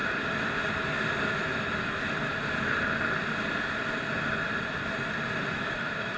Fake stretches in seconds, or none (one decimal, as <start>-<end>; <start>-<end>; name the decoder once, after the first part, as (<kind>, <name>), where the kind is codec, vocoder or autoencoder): 1.2-2.3 (autoencoder, DAC-VAE); 5.4-6.2